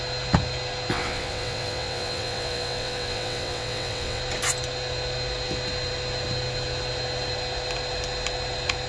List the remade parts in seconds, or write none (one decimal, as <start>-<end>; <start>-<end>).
0.9-4.2